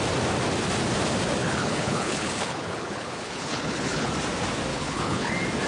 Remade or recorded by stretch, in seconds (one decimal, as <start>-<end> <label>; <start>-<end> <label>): 0.0-1.4 recorded; 1.4-4.1 remade; 4.1-4.7 recorded; 4.7-5.3 remade; 5.3-5.7 recorded